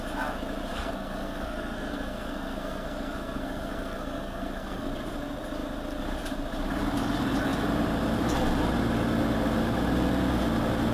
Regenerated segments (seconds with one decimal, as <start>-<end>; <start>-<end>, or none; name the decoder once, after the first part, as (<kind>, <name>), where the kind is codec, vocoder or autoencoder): 0.7-4.9 (codec, SNAC)